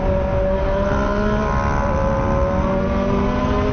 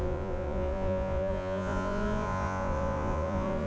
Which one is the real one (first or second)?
first